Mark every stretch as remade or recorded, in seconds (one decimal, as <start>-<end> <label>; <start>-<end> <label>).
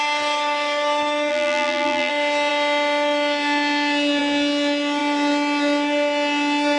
0.0-1.3 recorded; 1.3-2.1 remade; 2.1-6.8 recorded